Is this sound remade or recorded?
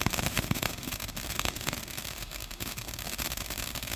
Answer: remade